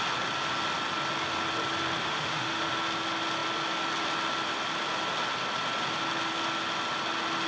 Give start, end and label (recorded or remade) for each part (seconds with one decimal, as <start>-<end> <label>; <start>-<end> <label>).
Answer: 0.0-2.0 recorded; 2.0-2.7 remade; 2.7-7.5 recorded